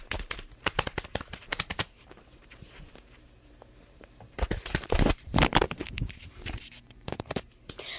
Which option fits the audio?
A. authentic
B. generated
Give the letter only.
B